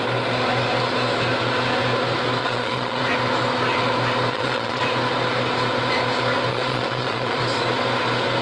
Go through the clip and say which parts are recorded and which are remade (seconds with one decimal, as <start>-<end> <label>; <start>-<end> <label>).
0.0-2.4 recorded; 2.4-3.0 remade; 3.0-4.3 recorded; 4.3-4.8 remade; 4.8-6.5 recorded; 6.5-7.4 remade; 7.4-8.4 recorded